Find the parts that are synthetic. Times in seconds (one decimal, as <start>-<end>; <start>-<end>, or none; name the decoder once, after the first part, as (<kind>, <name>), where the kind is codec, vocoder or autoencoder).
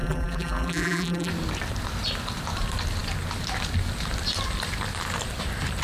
0.0-1.3 (vocoder, BigVGAN v2)